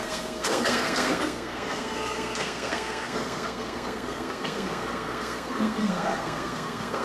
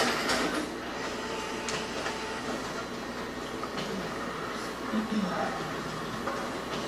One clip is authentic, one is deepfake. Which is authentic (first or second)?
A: second